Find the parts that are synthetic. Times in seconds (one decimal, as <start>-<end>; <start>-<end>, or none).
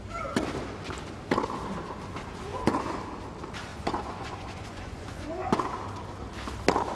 2.5-3.0; 3.7-5.7